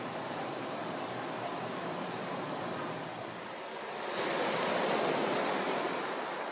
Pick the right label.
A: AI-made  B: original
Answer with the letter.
A